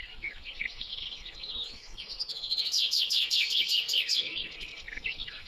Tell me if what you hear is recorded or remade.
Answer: remade